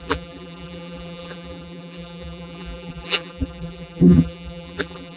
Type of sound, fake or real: fake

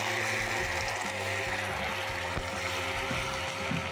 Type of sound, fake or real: real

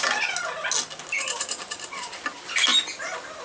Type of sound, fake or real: real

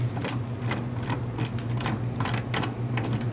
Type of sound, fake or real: real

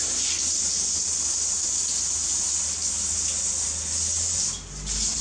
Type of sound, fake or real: real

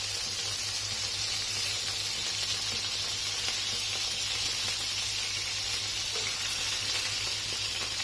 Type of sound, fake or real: real